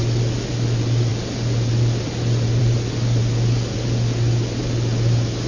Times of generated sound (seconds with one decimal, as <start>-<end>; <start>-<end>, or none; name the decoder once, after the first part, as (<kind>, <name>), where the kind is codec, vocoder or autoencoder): none